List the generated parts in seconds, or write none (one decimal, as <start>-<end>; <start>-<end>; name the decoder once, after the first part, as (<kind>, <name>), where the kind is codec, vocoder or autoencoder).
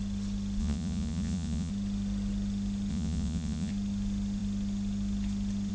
0.6-1.7 (vocoder, Vocos); 2.9-3.7